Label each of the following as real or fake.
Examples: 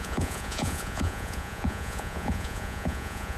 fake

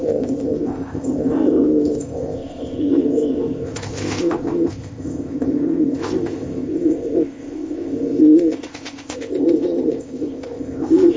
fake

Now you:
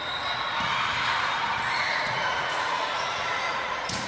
fake